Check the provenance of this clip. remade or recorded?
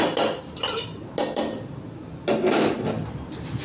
recorded